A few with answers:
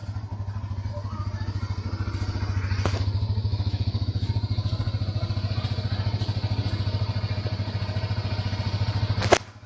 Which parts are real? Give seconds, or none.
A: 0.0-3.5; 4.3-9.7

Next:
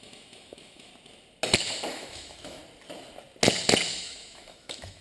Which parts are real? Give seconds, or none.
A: 0.9-1.9; 2.6-3.9

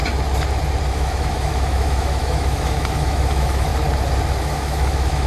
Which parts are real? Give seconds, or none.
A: 0.0-0.9; 3.7-4.4

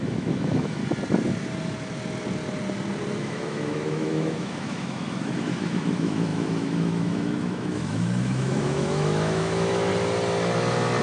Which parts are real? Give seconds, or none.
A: 0.8-3.2; 9.9-11.0

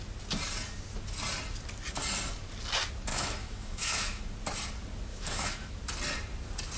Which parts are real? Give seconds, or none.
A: 0.0-3.1; 4.2-5.1; 5.7-6.8